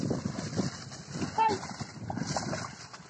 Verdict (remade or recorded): recorded